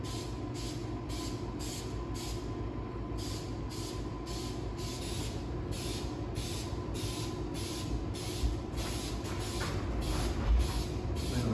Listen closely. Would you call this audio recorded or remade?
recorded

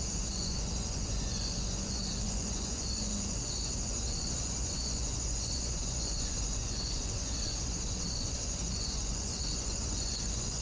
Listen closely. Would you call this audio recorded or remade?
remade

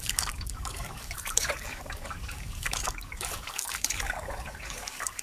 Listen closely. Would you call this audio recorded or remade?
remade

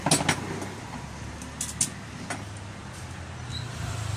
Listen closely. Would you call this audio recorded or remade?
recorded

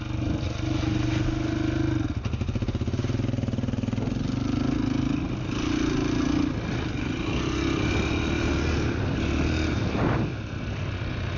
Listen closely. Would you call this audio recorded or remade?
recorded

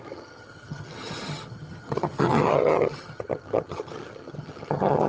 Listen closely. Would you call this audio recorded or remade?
remade